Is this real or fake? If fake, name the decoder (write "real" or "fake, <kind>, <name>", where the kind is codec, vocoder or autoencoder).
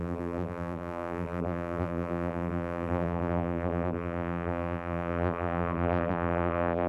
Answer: fake, vocoder, BigVGAN v2